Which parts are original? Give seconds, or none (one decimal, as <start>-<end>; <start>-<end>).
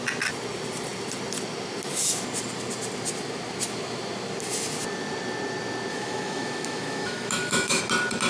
0.0-5.9; 7.8-8.3